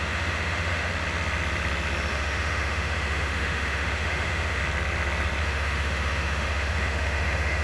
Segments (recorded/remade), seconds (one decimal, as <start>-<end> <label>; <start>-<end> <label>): 0.0-0.9 remade; 0.9-2.1 recorded; 2.1-4.6 remade; 4.6-5.4 recorded; 5.4-7.6 remade